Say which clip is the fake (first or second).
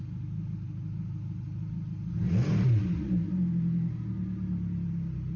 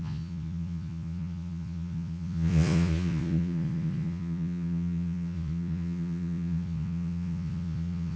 second